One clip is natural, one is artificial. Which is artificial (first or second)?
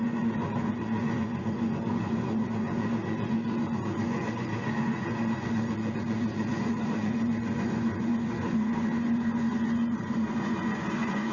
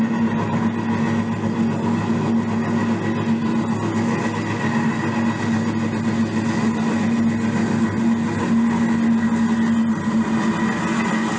first